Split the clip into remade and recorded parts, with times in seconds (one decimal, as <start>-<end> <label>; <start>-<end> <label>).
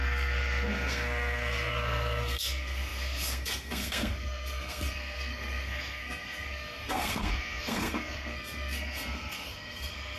0.0-10.2 remade